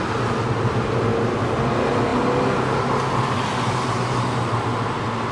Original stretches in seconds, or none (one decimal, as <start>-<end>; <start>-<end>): 0.0-5.3